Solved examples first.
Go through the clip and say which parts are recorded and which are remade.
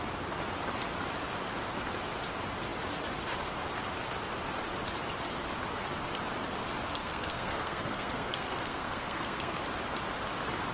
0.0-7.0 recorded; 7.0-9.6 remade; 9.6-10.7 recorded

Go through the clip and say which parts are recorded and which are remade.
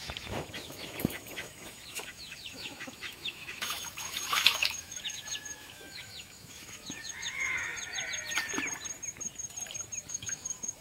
0.0-7.7 remade; 7.7-10.1 recorded; 10.1-10.8 remade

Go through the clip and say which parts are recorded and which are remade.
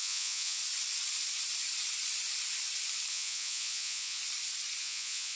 0.0-0.6 remade; 0.6-3.1 recorded; 3.1-4.2 remade; 4.2-4.8 recorded; 4.8-5.4 remade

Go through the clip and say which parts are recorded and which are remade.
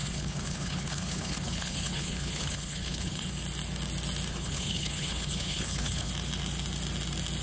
0.0-3.3 remade; 3.3-4.3 recorded; 4.3-6.1 remade; 6.1-7.4 recorded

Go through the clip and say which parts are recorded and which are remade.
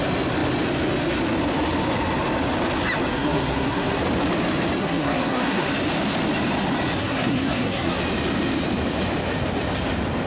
0.0-3.1 recorded; 3.1-4.0 remade; 4.0-4.8 recorded; 4.8-5.7 remade; 5.7-7.0 recorded; 7.0-8.0 remade; 8.0-10.3 recorded